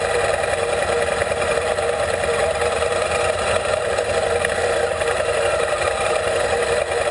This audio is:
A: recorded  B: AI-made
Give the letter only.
B